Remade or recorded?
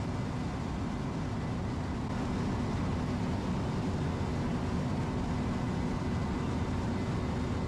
recorded